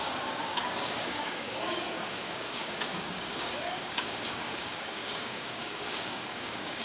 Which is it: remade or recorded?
remade